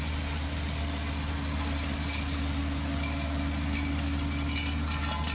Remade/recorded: recorded